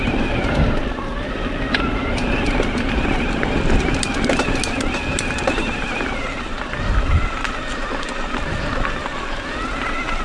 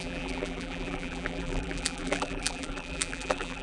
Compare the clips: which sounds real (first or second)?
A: first